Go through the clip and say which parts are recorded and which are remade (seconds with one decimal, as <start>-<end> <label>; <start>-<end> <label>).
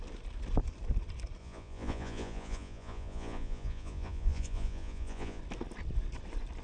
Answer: 0.0-1.4 recorded; 1.4-5.4 remade; 5.4-6.6 recorded